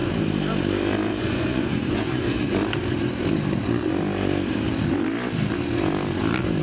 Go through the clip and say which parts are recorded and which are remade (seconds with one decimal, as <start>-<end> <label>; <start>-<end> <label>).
0.0-1.2 recorded; 1.2-2.6 remade; 2.6-6.6 recorded